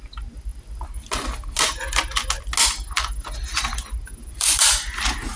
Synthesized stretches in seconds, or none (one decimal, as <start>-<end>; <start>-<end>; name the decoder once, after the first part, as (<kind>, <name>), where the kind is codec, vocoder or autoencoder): 4.2-4.7 (vocoder, BigVGAN v2)